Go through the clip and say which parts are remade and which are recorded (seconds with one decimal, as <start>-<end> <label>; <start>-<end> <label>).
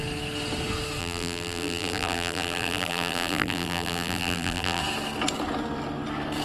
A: 0.0-1.0 recorded; 1.0-4.8 remade; 4.8-6.4 recorded